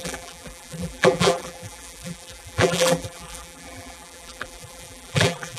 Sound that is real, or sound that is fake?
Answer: fake